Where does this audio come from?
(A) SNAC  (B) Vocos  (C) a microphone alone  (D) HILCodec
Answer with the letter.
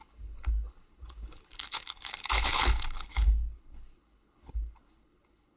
D